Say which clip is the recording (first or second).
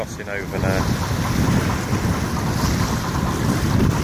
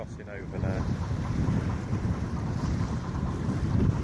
first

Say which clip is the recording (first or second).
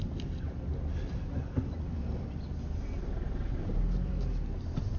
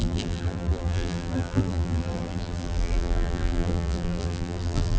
first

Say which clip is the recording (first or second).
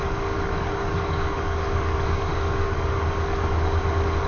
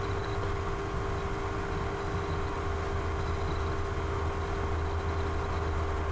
second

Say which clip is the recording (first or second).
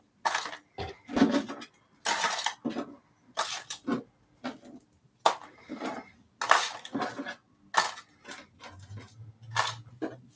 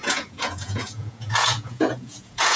first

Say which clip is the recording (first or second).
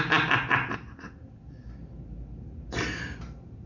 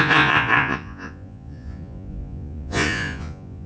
first